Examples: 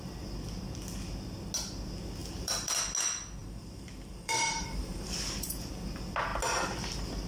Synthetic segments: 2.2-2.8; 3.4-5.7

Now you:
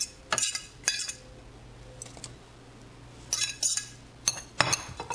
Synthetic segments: none

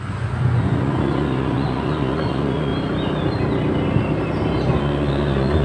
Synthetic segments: 0.0-2.7; 4.8-5.6

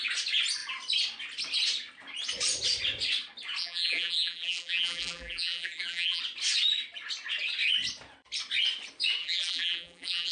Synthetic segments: 3.6-6.2; 9.2-10.3

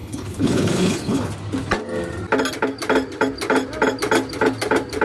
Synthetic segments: 0.0-1.3